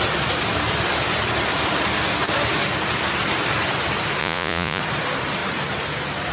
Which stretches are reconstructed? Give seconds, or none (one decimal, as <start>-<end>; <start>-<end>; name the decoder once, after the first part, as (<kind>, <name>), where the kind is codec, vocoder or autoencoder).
4.2-4.8 (vocoder, Vocos)